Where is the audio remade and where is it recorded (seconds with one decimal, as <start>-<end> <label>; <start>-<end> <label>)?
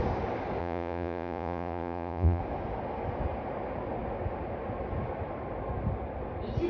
0.0-0.6 recorded; 0.6-2.4 remade; 2.4-6.7 recorded